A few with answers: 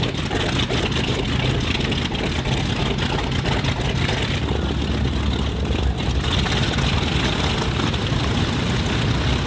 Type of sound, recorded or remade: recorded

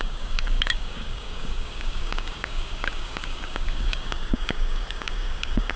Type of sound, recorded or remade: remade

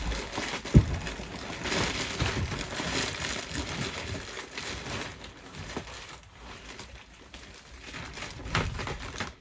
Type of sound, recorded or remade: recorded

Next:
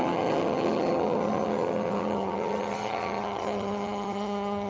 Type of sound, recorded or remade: remade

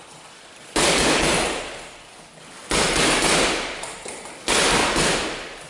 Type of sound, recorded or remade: recorded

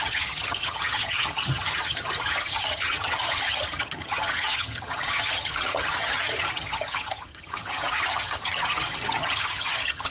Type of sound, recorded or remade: remade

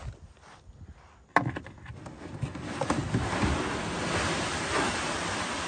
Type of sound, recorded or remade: recorded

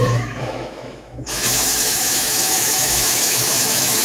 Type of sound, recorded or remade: remade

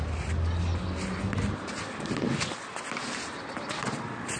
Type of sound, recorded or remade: recorded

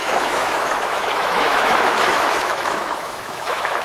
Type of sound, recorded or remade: remade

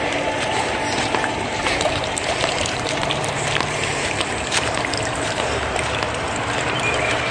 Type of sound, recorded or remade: remade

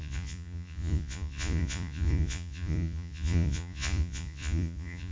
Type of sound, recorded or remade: remade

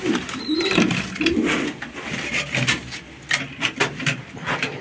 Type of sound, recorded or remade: remade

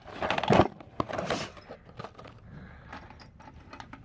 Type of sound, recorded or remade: remade